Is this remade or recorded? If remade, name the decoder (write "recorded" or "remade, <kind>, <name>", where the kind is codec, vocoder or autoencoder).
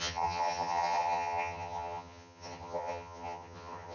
remade, vocoder, HiFi-GAN